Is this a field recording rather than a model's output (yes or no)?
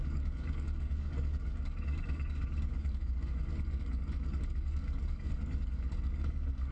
no